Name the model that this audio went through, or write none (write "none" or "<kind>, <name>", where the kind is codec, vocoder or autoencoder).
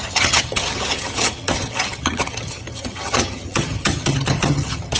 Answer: vocoder, HiFi-GAN